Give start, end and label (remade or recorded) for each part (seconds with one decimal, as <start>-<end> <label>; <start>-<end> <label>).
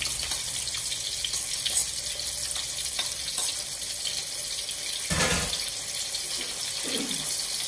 0.0-7.7 recorded